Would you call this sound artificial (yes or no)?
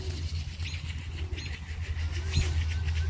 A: no